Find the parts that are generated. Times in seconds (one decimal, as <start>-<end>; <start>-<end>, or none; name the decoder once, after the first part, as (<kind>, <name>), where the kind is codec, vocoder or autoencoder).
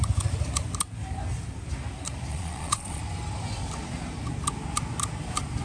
2.3-3.0 (vocoder, Vocos)